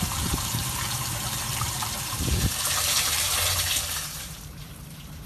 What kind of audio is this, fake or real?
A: fake